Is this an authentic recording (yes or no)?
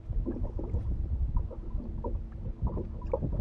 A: yes